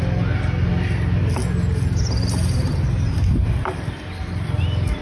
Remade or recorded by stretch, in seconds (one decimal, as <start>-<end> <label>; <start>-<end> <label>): 0.0-5.0 recorded